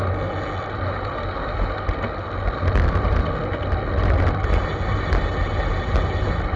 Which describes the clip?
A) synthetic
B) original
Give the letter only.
B